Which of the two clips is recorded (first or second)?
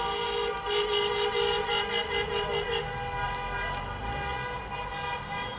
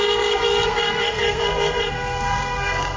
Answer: first